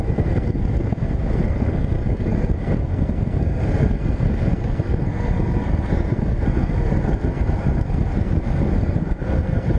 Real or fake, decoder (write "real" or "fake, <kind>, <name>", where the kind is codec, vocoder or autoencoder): fake, codec, SNAC